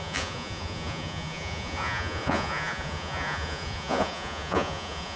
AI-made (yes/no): yes